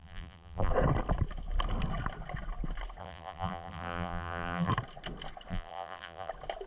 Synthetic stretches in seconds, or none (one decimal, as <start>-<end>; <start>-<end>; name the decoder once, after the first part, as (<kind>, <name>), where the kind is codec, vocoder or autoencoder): 0.0-0.7 (vocoder, BigVGAN v2); 3.0-4.7; 5.5-6.3